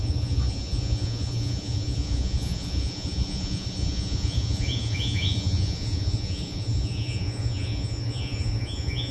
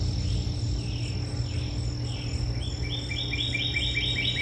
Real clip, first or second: second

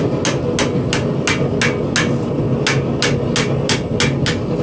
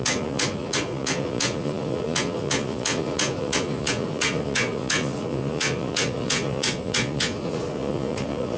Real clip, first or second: first